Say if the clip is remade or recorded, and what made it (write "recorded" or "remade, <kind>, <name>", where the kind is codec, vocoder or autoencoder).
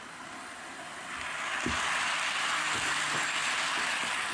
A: recorded